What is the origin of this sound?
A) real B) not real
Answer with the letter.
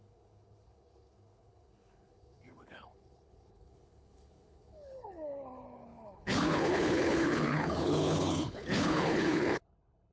B